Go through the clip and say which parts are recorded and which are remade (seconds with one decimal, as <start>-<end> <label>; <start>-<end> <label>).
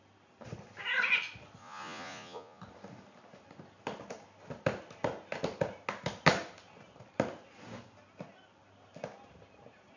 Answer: 0.0-1.6 recorded; 1.6-2.6 remade; 2.6-10.0 recorded